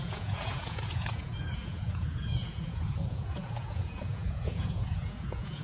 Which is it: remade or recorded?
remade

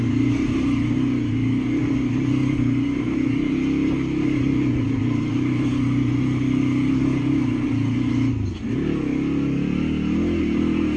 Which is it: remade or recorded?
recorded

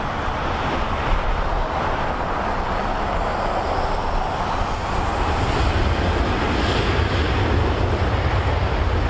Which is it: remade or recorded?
recorded